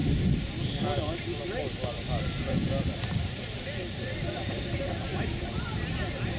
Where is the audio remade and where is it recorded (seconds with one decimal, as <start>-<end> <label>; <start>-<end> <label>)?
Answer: 0.0-2.5 recorded; 2.5-6.4 remade